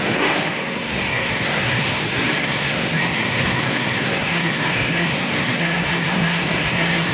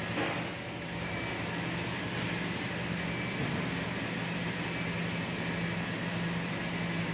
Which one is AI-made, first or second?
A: first